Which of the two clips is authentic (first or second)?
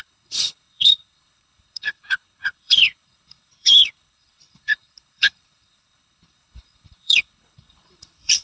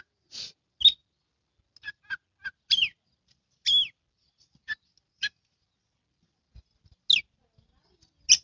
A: second